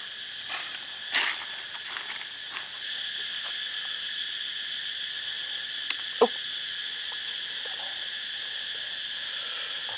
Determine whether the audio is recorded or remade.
recorded